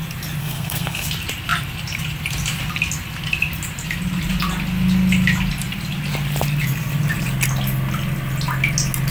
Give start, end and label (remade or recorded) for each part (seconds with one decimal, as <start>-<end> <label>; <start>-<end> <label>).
0.0-0.4 recorded; 0.4-1.1 remade; 1.1-9.1 recorded